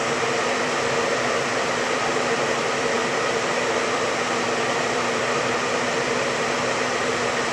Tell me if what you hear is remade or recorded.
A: remade